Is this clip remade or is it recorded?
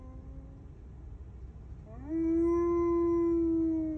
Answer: recorded